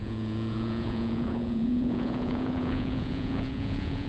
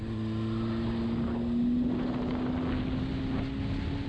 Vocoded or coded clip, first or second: first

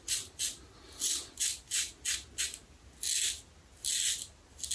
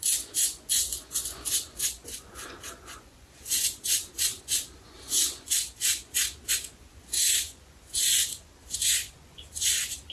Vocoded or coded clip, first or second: second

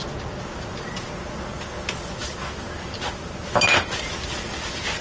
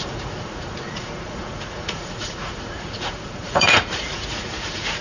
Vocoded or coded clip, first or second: second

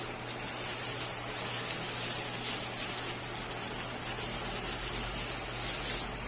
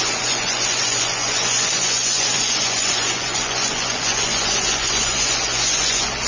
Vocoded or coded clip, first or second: second